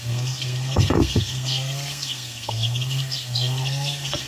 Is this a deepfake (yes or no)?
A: yes